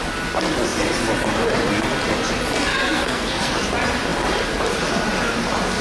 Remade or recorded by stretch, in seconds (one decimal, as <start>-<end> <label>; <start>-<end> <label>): 0.0-2.7 recorded; 2.7-3.6 remade; 3.6-5.8 recorded